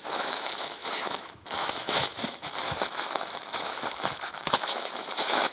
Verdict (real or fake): fake